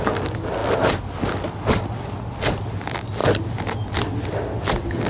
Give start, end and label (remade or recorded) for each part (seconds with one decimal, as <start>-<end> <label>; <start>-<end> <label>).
0.0-5.1 recorded